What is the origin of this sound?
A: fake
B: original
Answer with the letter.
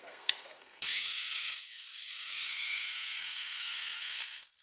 A